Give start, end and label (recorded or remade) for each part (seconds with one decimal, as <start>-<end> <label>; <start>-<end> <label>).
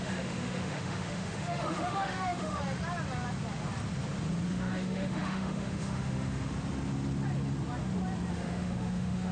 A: 0.0-2.6 remade; 2.6-4.5 recorded; 4.5-6.5 remade; 6.5-8.3 recorded; 8.3-9.3 remade